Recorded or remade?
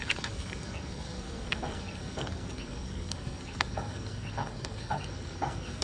remade